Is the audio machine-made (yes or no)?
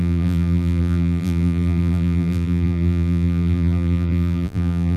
yes